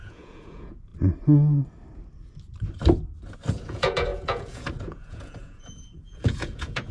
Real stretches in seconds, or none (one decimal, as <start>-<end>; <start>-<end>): 0.9-3.5